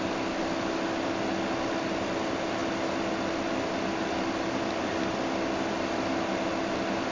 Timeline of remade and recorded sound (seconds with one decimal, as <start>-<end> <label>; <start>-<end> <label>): 0.0-7.1 recorded